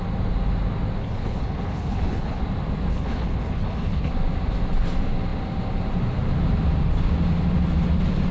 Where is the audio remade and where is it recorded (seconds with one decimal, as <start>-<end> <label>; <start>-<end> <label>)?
0.0-1.0 recorded; 1.0-2.4 remade; 2.4-2.9 recorded; 2.9-4.1 remade; 4.1-8.3 recorded